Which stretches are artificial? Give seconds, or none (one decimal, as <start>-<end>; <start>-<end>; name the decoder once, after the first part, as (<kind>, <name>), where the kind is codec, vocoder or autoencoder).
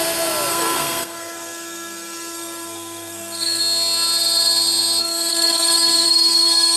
0.5-3.6 (codec, SNAC); 5.3-6.8